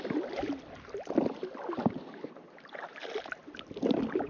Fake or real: real